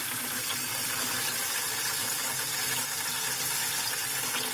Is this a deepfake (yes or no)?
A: no